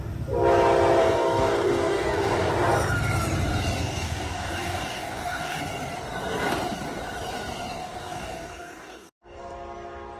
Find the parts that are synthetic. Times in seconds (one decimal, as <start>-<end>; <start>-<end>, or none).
1.0-2.5; 3.8-5.6; 7.8-9.4